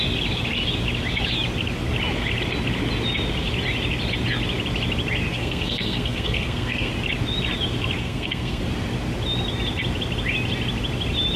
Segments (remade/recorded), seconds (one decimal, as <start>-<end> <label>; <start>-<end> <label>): 0.0-5.3 recorded; 5.3-6.9 remade; 6.9-8.0 recorded; 8.0-8.6 remade; 8.6-11.4 recorded